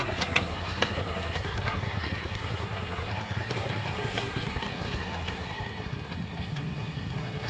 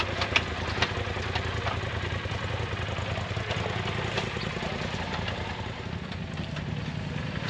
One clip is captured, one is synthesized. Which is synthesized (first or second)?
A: first